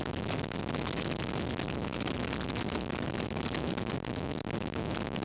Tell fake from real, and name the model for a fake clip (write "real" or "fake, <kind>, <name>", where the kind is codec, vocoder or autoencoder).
real